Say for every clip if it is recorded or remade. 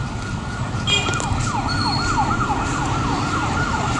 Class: recorded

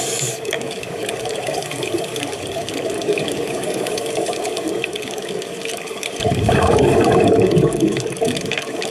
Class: remade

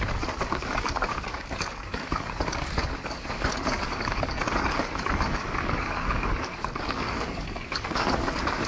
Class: remade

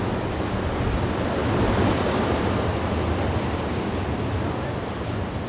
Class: recorded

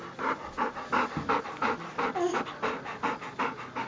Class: recorded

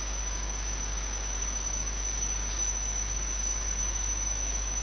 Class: remade